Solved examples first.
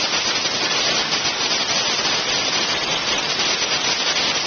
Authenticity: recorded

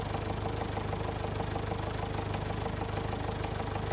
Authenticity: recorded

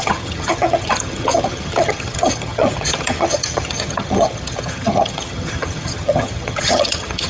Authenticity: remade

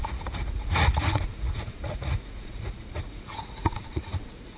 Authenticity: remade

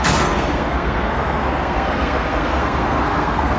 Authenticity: remade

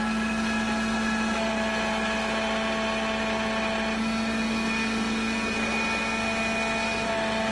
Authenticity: recorded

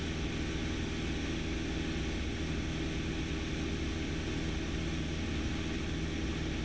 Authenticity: recorded